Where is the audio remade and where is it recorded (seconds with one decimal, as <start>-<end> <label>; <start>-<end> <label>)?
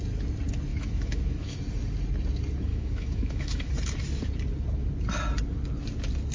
0.0-0.7 recorded; 0.7-1.6 remade; 1.6-2.7 recorded; 2.7-3.7 remade; 3.7-6.3 recorded